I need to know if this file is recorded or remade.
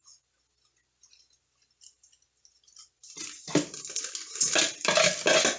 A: recorded